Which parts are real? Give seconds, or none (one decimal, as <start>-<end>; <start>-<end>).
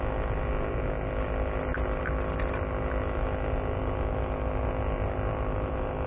0.0-6.1